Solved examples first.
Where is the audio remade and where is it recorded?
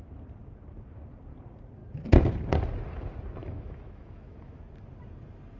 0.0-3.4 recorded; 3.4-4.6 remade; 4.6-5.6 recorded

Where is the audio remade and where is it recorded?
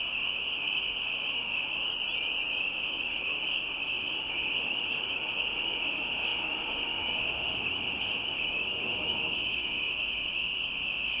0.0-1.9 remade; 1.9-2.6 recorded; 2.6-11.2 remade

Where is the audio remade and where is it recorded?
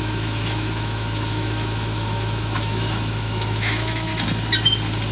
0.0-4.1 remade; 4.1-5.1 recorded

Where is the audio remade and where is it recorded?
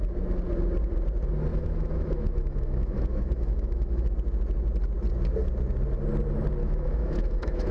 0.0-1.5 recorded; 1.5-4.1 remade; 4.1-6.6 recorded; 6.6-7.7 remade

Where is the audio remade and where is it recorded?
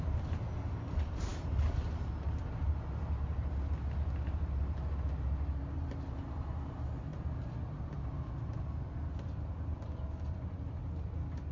0.0-11.5 recorded